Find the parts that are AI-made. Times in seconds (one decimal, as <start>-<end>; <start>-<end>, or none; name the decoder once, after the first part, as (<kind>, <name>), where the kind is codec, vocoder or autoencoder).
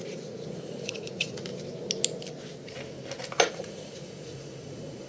0.0-1.5 (vocoder, Vocos); 3.5-5.1